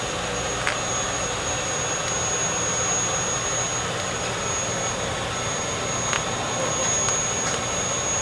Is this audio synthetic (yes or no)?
no